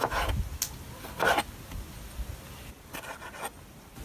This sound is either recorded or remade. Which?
recorded